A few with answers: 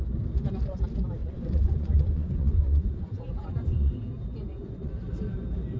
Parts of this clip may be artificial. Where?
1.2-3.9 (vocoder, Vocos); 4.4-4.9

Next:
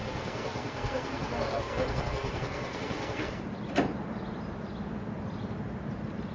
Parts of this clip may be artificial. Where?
0.0-3.4 (codec, SNAC)

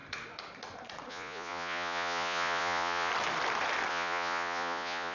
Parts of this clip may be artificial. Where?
1.1-3.1 (vocoder, Vocos); 3.9-5.1

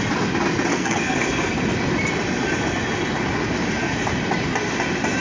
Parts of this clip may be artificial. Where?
0.7-1.3 (codec, SNAC)

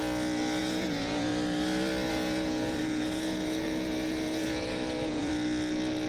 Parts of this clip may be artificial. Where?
0.6-1.3 (vocoder, Vocos); 2.1-5.3

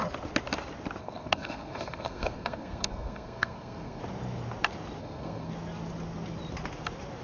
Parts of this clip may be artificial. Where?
1.0-4.0 (codec, SNAC); 5.0-5.5